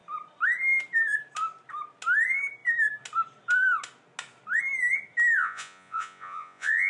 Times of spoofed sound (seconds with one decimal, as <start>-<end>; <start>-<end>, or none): 5.4-6.9